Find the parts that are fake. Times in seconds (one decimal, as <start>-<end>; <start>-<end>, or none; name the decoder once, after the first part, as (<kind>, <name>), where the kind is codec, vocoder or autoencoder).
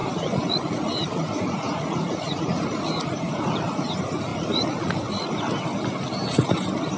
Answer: 0.0-3.9 (vocoder, Vocos); 4.3-5.4